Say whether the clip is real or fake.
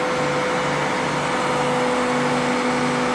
real